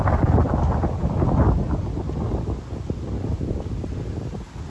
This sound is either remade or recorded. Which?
recorded